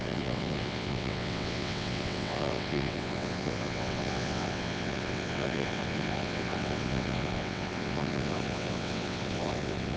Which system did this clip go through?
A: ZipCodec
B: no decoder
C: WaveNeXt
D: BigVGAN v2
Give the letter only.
C